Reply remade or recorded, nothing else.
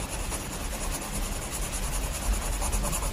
recorded